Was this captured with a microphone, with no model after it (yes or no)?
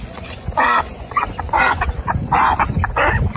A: no